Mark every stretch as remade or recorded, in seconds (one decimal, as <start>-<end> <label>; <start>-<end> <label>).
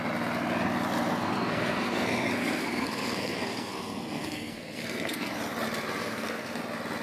0.0-1.1 recorded; 1.1-5.3 remade; 5.3-6.0 recorded; 6.0-6.6 remade; 6.6-7.0 recorded